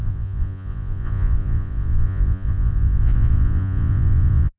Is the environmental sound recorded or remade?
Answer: remade